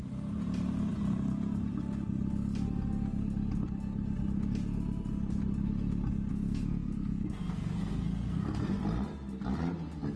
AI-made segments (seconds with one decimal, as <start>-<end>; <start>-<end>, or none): 6.3-8.8

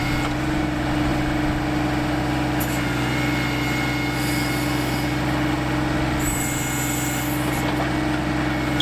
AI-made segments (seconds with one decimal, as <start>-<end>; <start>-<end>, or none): none

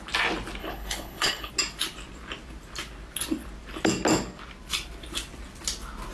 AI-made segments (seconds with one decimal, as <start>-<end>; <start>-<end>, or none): 0.6-1.5

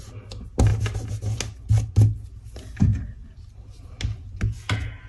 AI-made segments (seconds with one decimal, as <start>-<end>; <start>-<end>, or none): none